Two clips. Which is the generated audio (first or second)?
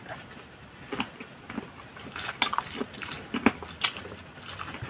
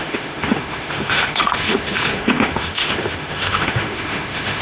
second